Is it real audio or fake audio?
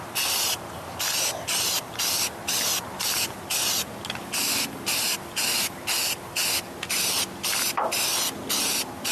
real